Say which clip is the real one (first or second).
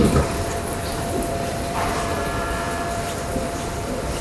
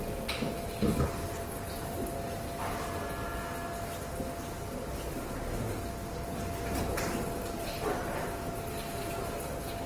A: second